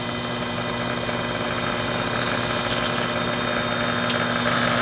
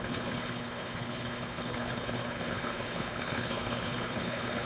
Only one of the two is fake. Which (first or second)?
second